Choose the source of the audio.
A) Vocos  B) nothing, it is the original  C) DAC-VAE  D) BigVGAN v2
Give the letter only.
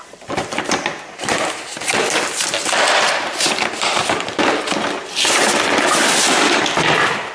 D